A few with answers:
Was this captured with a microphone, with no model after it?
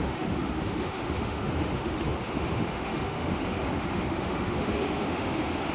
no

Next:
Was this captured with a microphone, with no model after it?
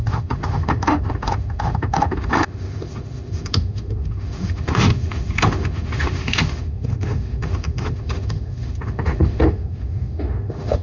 no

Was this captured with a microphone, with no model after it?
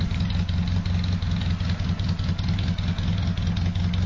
yes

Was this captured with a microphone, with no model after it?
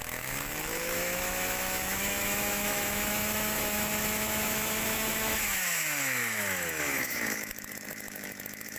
no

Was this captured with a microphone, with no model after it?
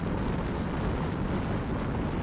yes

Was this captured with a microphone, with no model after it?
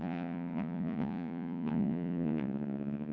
no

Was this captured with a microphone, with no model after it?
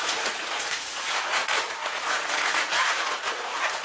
no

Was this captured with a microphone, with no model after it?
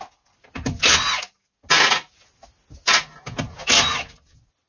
yes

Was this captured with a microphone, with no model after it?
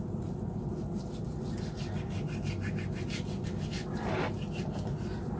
yes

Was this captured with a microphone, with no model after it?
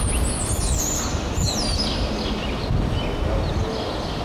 yes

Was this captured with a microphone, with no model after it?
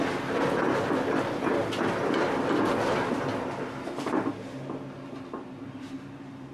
yes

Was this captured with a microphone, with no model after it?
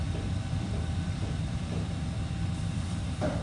no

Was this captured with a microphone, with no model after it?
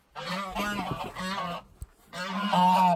yes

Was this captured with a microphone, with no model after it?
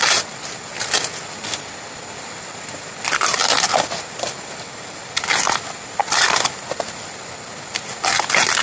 yes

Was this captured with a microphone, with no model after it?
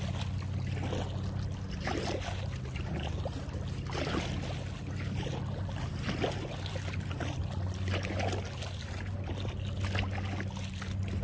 yes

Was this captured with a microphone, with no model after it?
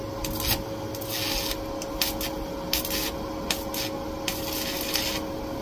yes